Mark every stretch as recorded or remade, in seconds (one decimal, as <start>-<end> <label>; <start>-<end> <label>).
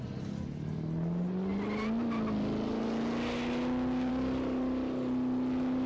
0.0-5.9 recorded